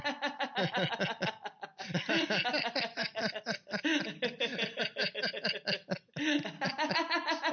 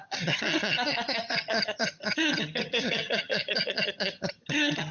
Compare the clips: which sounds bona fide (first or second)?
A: first